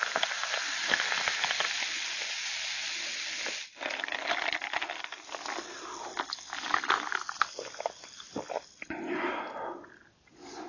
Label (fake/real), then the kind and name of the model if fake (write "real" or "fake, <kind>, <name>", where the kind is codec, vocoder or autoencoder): real